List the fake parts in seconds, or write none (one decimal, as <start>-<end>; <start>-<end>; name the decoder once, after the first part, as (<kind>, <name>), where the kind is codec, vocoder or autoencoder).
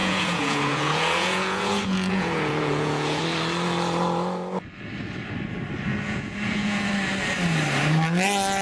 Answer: 0.0-3.2 (vocoder, Vocos); 5.9-6.9